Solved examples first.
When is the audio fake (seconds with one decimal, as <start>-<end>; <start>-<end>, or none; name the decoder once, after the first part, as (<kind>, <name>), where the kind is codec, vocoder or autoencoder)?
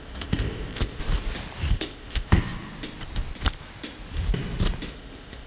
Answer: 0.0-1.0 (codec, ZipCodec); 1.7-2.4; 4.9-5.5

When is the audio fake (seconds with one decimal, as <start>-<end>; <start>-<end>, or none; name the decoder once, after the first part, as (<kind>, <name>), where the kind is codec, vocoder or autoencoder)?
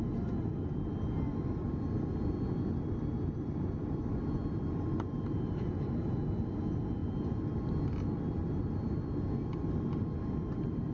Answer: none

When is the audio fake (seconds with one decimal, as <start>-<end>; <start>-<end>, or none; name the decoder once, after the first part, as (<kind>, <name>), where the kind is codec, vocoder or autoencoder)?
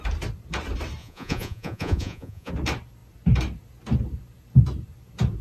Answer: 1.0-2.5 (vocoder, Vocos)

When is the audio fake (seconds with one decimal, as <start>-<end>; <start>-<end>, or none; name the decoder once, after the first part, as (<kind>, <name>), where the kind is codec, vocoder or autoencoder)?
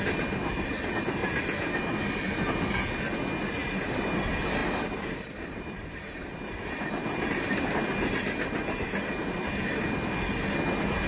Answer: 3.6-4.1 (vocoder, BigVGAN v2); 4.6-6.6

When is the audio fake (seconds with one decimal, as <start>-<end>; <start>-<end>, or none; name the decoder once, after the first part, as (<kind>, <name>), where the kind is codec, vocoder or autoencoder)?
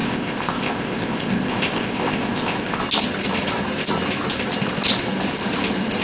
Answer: 0.0-2.8 (codec, ZipCodec)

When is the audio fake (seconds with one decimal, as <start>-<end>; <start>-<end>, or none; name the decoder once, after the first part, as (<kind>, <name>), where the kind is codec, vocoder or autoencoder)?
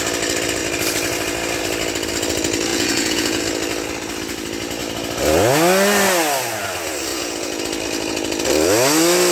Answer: 2.7-3.4 (vocoder, Vocos); 7.1-7.6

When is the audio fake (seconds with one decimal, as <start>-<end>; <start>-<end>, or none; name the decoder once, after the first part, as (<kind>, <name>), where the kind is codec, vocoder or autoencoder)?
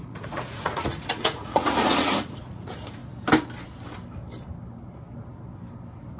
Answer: 0.0-3.0 (vocoder, Vocos)